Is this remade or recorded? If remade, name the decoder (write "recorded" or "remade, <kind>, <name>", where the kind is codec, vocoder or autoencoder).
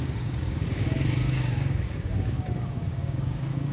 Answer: remade, codec, DAC